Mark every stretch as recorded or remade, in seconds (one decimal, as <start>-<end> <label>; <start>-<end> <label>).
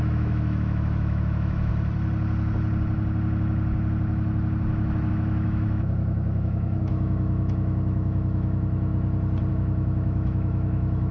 0.0-1.7 remade; 1.7-5.1 recorded; 5.1-8.9 remade; 8.9-9.5 recorded; 9.5-11.1 remade